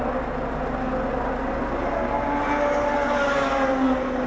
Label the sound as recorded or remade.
recorded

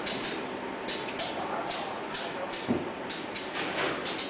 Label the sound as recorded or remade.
recorded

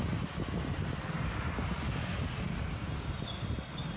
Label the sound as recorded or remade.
recorded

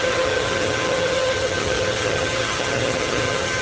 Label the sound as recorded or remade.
remade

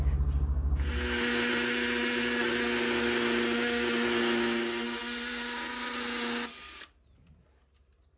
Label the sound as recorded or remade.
recorded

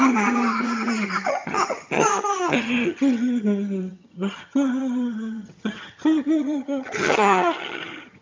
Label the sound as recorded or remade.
remade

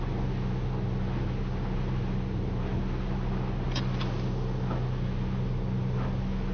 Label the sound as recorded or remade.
recorded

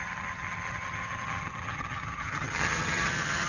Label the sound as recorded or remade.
remade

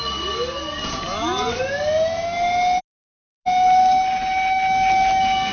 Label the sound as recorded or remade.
recorded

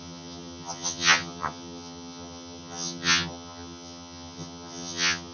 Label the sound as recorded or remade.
remade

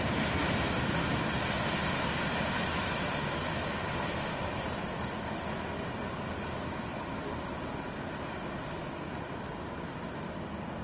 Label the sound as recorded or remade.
recorded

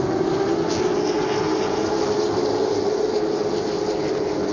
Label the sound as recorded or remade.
recorded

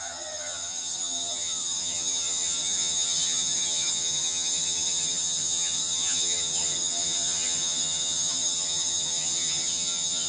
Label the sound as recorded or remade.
remade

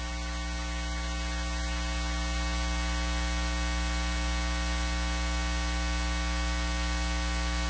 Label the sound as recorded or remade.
recorded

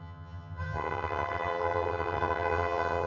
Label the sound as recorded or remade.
remade